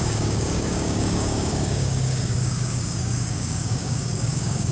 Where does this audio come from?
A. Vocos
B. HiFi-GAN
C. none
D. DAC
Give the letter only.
D